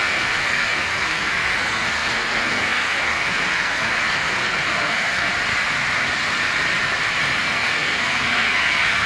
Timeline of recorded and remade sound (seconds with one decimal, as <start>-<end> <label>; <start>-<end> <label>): 0.0-5.3 remade; 5.3-7.4 recorded; 7.4-9.1 remade